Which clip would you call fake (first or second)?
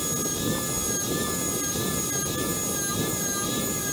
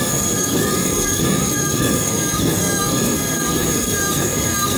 second